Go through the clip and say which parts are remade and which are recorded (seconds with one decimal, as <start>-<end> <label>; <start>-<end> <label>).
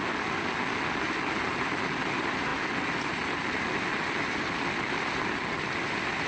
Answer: 0.0-6.3 recorded